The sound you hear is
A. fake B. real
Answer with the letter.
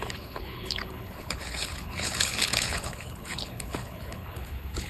A